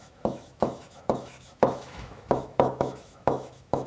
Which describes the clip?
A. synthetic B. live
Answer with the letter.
A